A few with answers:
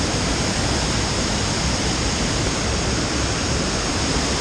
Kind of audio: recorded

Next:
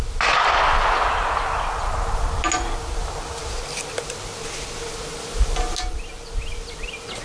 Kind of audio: recorded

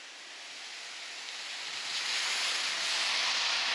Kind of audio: recorded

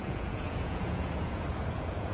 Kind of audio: remade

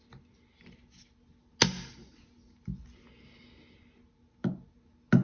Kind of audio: recorded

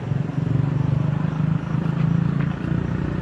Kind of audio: recorded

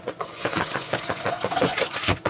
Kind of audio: remade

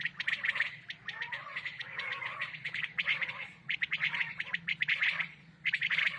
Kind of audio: remade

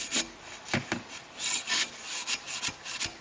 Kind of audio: recorded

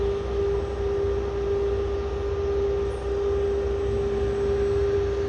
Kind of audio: recorded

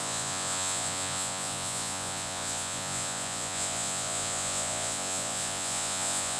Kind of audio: remade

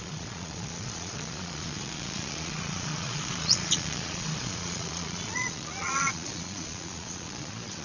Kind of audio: remade